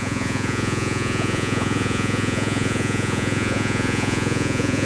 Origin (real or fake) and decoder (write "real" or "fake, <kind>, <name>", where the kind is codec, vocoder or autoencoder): fake, vocoder, Vocos